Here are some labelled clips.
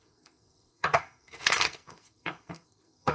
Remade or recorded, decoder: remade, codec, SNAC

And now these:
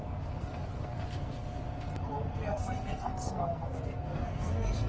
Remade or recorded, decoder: remade, codec, SNAC